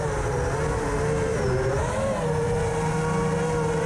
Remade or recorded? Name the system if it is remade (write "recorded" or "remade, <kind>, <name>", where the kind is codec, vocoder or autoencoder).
recorded